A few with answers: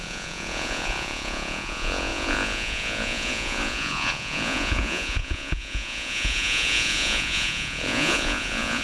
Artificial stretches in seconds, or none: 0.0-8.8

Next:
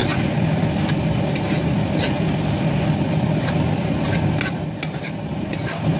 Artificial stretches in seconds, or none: none